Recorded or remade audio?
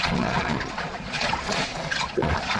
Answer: remade